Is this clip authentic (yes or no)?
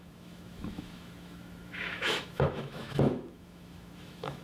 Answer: no